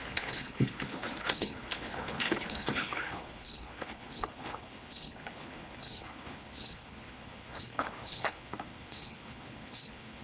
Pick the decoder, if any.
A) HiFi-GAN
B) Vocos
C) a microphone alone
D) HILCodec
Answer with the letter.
D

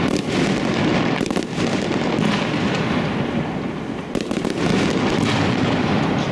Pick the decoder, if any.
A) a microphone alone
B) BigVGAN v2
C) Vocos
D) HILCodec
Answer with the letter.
A